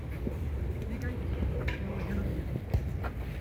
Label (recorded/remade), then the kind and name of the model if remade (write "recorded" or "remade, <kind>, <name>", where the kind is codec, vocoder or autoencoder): recorded